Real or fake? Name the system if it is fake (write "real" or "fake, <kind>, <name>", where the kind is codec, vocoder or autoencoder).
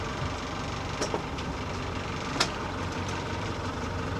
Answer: fake, vocoder, BigVGAN v2